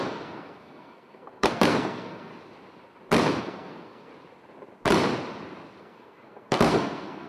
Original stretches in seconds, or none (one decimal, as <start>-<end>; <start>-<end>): 2.3-3.4; 4.1-5.8